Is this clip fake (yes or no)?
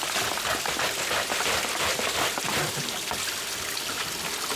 no